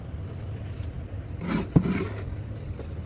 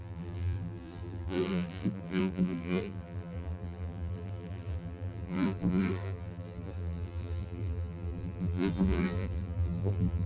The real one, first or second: first